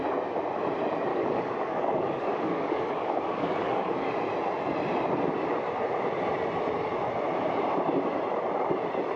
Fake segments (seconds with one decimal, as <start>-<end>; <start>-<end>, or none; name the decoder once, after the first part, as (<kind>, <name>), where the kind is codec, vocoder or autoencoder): 1.1-4.1 (codec, DAC)